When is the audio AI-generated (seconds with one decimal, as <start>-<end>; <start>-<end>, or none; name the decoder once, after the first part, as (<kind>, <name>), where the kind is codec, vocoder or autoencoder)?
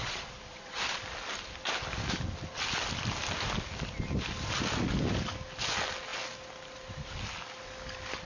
0.0-1.0 (vocoder, Vocos)